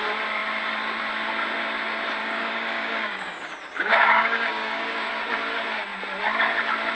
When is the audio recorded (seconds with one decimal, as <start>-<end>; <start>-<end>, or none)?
0.0-2.2; 5.1-6.9